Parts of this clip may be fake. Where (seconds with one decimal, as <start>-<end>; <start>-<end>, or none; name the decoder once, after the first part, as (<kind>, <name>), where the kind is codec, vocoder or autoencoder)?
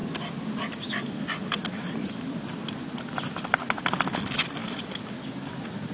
none